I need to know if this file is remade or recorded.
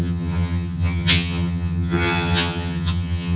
remade